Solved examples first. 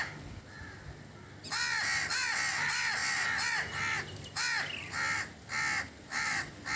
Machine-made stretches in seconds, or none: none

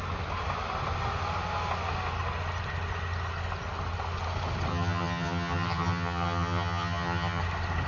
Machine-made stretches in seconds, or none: 4.7-7.4 (vocoder, HiFi-GAN)